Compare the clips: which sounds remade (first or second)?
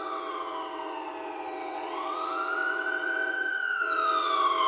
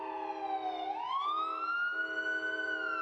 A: first